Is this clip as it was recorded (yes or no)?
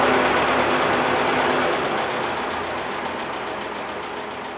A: yes